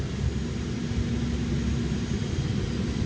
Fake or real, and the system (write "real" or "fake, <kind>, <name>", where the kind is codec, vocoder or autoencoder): real